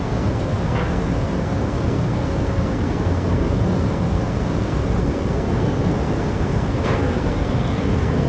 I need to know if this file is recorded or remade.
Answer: remade